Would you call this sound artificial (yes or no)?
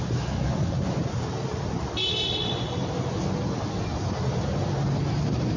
no